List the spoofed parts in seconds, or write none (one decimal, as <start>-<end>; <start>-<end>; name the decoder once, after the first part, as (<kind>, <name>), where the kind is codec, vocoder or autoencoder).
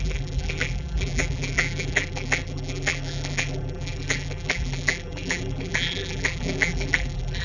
0.0-7.4 (vocoder, BigVGAN v2)